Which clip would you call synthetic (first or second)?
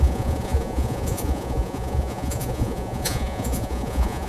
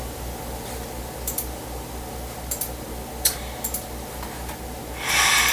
first